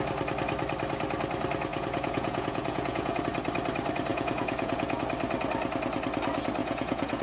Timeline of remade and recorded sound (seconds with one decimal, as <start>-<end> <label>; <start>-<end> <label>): 0.0-1.7 recorded; 1.7-3.2 remade; 3.2-4.1 recorded; 4.1-5.0 remade; 5.0-6.6 recorded; 6.6-7.2 remade